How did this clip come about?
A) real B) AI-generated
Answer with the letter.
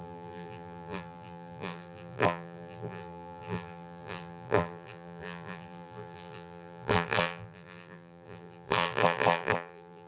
B